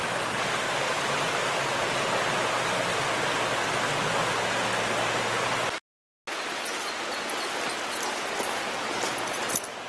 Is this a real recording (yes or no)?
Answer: yes